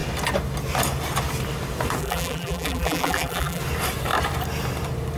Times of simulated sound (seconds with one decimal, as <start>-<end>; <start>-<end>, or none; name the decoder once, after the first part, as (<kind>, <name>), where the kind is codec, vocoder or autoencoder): 2.0-3.6 (vocoder, BigVGAN v2)